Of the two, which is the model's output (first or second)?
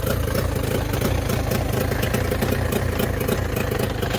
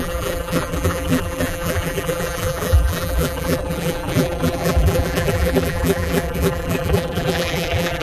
second